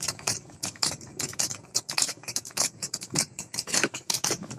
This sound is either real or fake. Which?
fake